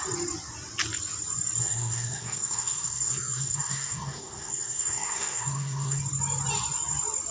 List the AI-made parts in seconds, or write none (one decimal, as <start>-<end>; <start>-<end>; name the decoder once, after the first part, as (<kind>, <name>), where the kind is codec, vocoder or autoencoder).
1.6-6.0 (codec, SNAC)